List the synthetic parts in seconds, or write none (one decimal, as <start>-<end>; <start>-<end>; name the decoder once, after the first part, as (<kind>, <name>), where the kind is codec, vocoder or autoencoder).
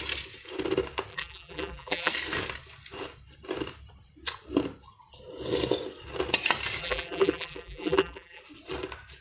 1.1-2.1 (vocoder, BigVGAN v2); 6.8-8.4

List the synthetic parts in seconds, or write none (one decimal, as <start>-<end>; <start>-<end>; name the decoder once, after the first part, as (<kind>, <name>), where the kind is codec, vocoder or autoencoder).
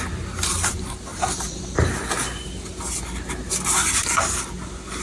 none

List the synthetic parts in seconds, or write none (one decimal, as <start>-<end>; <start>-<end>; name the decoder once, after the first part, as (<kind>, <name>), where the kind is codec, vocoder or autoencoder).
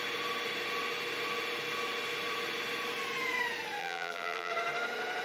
3.8-4.5 (vocoder, BigVGAN v2)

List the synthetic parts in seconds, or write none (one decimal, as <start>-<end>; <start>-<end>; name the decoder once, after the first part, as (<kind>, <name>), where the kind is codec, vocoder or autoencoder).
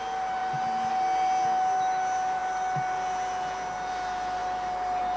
none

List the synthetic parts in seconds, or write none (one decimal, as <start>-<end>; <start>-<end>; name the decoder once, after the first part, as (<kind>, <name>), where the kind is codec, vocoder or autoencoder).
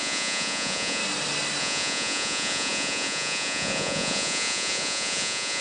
0.0-1.0 (vocoder, Vocos); 1.6-5.6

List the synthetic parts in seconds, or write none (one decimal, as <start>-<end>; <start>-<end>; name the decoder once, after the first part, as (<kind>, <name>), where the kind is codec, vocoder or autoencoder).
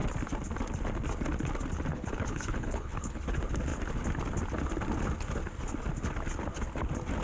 1.9-3.2 (codec, HILCodec)